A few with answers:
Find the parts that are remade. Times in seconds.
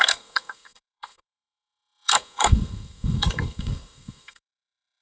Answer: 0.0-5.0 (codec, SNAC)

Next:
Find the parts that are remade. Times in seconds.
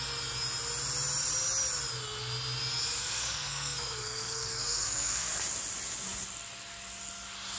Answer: 3.0-5.4 (codec, SNAC)